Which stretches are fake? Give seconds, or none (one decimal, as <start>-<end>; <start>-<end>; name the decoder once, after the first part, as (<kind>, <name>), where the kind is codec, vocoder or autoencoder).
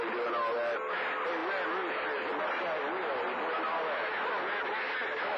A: none